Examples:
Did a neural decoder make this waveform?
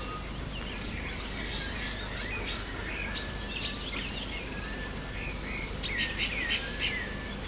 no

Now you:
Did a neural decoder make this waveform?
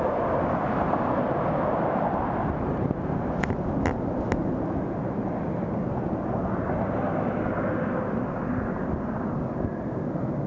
no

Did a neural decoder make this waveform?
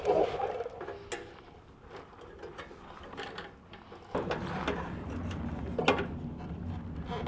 no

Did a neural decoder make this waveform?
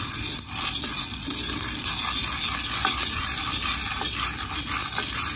no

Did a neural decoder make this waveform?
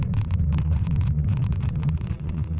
yes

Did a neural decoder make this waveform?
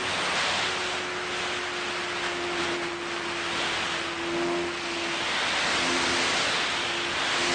no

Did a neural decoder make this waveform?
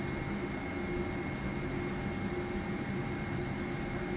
no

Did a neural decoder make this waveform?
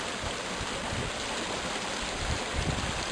no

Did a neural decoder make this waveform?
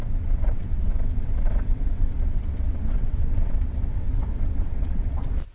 yes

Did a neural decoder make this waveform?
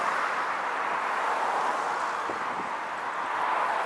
no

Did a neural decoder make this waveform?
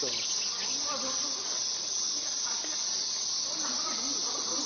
no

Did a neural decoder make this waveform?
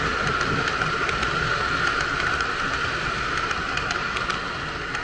no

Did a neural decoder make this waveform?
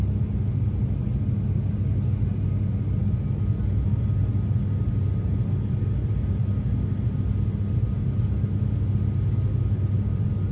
no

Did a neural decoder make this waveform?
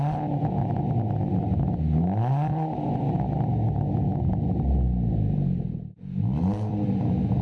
no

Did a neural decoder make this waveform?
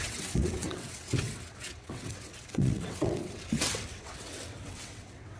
yes